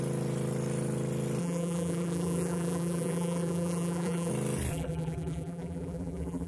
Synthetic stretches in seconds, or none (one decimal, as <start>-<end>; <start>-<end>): 1.4-4.3; 4.7-6.5